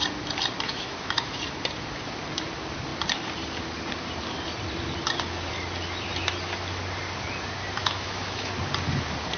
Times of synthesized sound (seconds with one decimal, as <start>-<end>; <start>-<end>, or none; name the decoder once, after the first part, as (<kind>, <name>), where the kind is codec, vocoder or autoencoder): 0.7-1.4 (autoencoder, DAC-VAE); 7.8-8.5

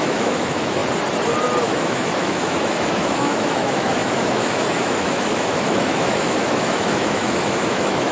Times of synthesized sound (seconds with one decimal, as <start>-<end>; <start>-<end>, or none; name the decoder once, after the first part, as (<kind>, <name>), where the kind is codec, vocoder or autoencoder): 0.0-0.8 (autoencoder, DAC-VAE); 1.6-8.1

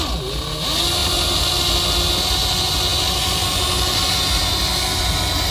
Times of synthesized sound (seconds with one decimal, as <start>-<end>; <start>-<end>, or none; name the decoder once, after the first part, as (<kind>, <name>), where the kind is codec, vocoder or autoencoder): none

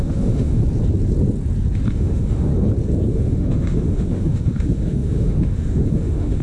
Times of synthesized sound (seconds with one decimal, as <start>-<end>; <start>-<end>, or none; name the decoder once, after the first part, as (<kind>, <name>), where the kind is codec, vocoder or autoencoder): 0.0-0.6 (autoencoder, DAC-VAE); 1.9-2.5; 3.1-6.4